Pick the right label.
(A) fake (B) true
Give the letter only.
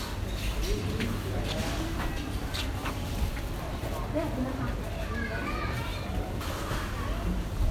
B